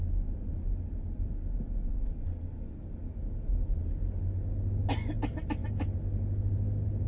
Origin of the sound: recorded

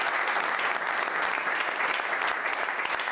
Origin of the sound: recorded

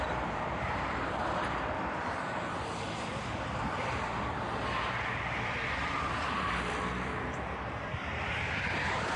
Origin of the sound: remade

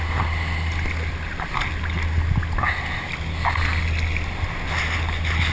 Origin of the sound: recorded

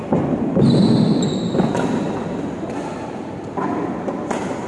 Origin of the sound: recorded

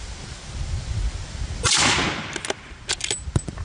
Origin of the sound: recorded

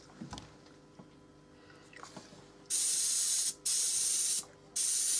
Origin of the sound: recorded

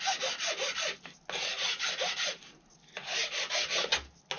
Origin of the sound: recorded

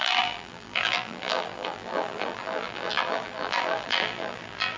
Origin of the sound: remade